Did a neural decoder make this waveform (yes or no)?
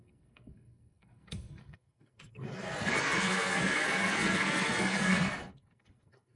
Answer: yes